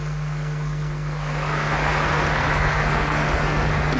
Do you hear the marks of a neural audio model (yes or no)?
yes